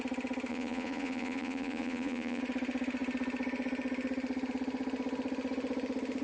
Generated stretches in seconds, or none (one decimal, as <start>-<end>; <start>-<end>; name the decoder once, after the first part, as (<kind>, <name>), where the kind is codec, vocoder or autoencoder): 0.5-2.4 (vocoder, Vocos)